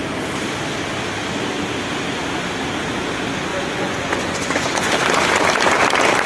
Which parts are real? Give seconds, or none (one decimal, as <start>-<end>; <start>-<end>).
0.0-3.5; 4.9-6.3